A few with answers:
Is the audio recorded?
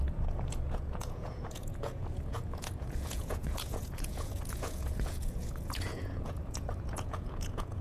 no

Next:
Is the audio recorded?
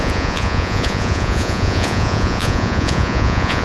no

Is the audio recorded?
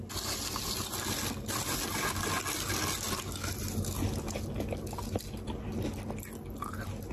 yes